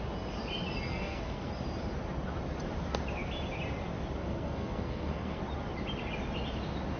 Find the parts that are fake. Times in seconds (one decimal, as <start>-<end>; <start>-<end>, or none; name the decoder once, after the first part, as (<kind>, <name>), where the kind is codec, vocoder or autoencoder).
0.9-1.5 (codec, SNAC); 4.2-5.4